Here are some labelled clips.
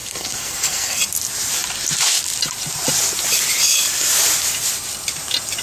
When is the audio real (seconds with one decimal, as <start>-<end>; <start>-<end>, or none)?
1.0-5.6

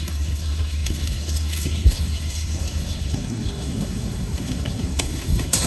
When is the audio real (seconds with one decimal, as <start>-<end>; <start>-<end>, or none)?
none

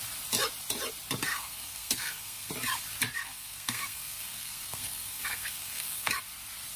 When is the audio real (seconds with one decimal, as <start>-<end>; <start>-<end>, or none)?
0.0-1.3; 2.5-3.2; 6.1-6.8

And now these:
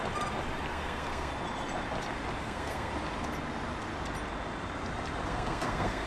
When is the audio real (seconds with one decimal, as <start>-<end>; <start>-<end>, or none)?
0.0-0.7; 1.3-2.4; 2.9-5.3

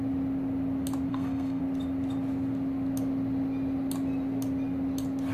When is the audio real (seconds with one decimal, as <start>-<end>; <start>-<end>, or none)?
0.0-1.1; 1.6-5.3